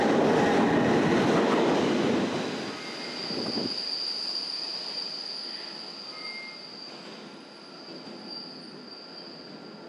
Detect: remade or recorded recorded